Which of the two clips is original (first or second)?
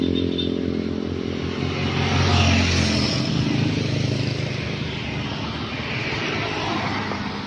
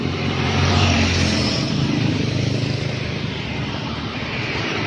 first